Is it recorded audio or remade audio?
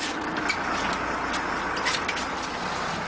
recorded